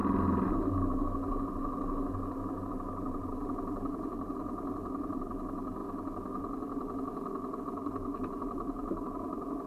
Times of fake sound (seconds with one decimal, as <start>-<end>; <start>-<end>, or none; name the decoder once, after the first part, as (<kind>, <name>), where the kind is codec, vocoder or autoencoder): 2.7-5.8 (vocoder, BigVGAN v2); 7.6-9.7